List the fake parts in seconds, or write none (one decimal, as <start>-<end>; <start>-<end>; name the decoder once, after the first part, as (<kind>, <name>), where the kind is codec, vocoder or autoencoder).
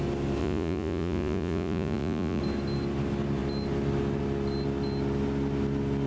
0.4-2.4 (vocoder, Vocos)